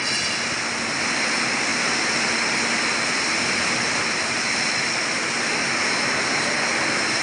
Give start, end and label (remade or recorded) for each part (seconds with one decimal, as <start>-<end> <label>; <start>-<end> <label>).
0.0-7.2 recorded